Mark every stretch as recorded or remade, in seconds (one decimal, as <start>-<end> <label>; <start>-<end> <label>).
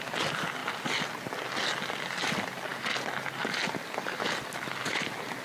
0.0-5.4 recorded